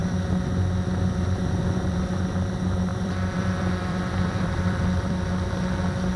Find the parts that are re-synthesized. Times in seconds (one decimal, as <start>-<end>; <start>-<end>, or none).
2.9-5.3